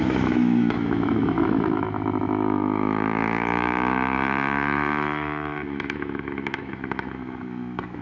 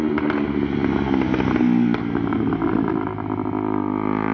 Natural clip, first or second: second